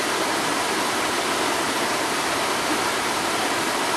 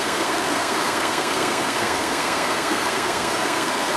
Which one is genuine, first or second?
first